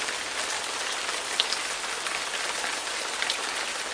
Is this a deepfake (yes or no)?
no